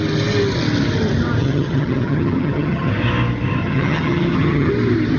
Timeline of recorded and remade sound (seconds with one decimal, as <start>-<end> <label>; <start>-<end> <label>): 0.0-1.4 recorded; 1.4-2.9 remade; 2.9-3.6 recorded; 3.6-4.7 remade; 4.7-5.2 recorded